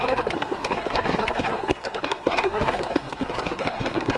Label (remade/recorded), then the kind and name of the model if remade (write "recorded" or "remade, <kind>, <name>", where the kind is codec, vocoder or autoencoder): remade, codec, SNAC